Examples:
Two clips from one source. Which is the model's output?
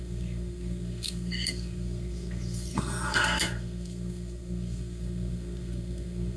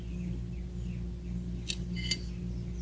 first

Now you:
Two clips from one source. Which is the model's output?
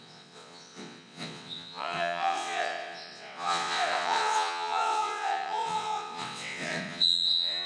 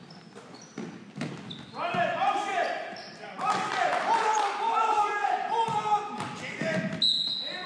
first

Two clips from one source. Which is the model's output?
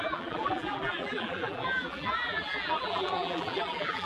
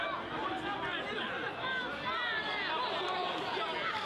first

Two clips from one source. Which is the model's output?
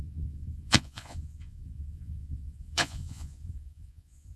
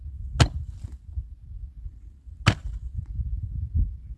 first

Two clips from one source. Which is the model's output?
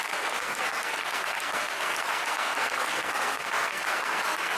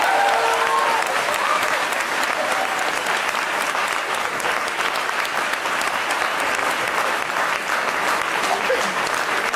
first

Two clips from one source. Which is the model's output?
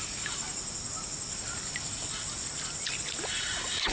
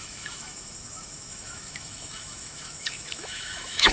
second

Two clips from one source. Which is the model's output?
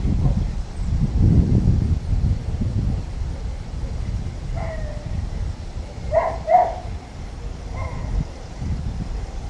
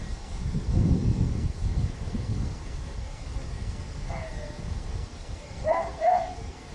second